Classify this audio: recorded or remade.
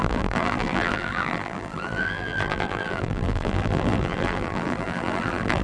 remade